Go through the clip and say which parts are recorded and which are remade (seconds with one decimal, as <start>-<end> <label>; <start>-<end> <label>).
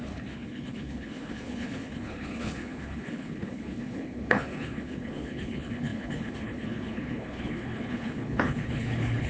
0.0-9.3 remade